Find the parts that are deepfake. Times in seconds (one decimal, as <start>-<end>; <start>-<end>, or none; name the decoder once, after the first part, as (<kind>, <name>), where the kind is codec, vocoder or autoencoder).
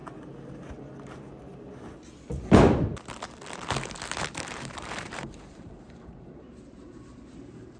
4.3-7.8 (vocoder, BigVGAN v2)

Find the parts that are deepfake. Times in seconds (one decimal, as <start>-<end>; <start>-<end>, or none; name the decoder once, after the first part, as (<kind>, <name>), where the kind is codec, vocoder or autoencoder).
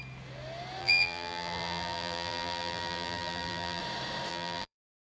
0.8-3.8 (vocoder, BigVGAN v2); 4.3-5.0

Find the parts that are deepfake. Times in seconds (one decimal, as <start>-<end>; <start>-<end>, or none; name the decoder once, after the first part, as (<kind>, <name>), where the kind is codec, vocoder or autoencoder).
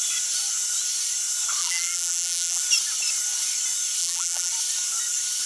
1.6-2.6 (vocoder, BigVGAN v2); 4.0-4.5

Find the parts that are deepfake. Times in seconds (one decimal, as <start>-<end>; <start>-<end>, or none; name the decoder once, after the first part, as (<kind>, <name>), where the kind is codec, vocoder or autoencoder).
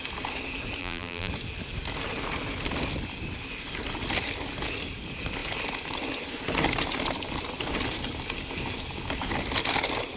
0.8-1.3 (vocoder, BigVGAN v2)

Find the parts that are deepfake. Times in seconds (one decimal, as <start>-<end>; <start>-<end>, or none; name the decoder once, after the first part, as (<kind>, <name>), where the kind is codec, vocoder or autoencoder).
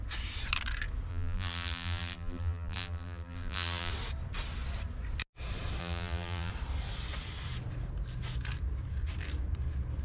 1.1-3.9 (vocoder, BigVGAN v2); 5.8-6.5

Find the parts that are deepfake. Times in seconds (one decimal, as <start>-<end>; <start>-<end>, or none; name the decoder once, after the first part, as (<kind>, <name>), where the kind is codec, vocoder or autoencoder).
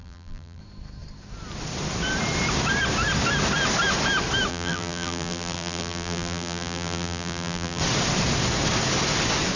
0.0-0.6 (vocoder, BigVGAN v2); 4.5-7.8